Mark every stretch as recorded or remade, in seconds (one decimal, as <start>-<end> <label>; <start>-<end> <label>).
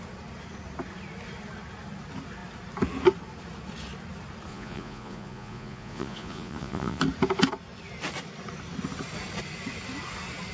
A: 0.0-4.5 recorded; 4.5-7.0 remade; 7.0-10.5 recorded